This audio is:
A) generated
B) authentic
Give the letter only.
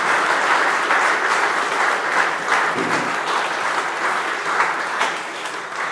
B